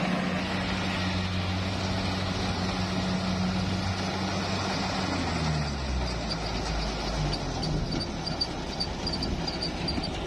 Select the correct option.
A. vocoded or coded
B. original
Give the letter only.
B